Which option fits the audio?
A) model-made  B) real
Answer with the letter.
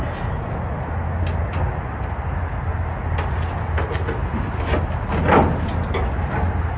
B